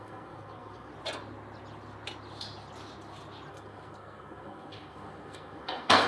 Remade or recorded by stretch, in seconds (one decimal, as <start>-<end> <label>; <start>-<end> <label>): 0.0-0.9 remade; 0.9-3.5 recorded; 3.5-6.1 remade